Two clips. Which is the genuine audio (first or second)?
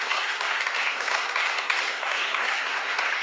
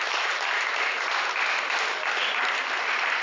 second